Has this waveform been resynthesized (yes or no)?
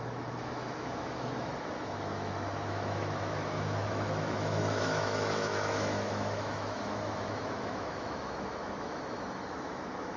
yes